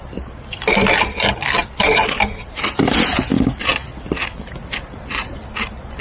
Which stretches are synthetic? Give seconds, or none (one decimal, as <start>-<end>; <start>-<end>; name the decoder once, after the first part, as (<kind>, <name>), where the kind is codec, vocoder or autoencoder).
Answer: 1.6-3.1 (vocoder, BigVGAN v2)